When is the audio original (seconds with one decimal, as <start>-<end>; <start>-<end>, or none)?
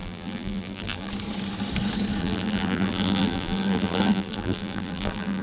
1.1-2.2